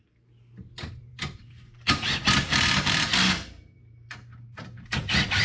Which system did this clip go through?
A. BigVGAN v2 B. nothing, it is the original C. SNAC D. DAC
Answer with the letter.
A